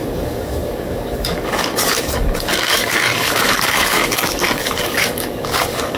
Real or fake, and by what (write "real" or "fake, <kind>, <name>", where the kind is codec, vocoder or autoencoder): fake, codec, DAC